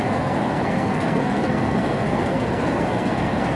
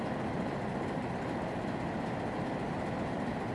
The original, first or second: second